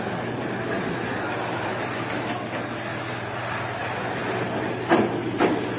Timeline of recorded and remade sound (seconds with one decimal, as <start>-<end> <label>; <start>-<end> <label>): 0.0-5.8 recorded